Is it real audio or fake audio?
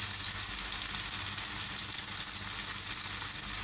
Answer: real